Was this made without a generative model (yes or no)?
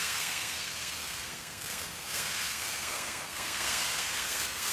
no